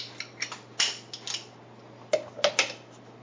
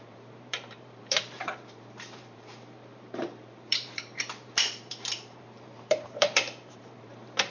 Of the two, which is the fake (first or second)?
second